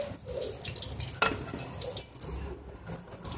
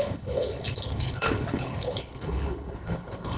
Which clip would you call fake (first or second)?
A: second